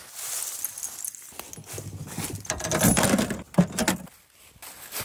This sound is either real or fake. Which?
real